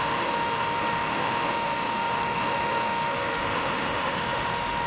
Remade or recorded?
remade